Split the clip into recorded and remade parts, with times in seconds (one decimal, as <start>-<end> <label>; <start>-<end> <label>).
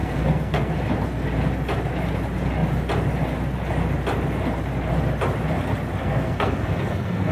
0.0-0.7 remade; 0.7-6.0 recorded; 6.0-7.3 remade